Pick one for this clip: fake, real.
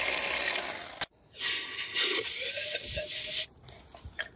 real